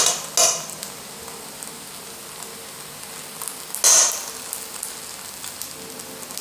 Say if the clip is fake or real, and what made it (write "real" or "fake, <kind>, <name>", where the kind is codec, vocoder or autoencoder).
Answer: real